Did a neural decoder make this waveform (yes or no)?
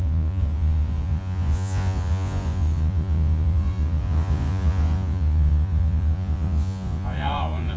yes